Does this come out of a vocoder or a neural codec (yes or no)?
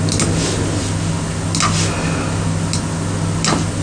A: no